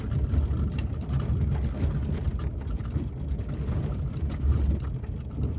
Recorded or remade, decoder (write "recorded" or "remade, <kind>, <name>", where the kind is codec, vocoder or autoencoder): recorded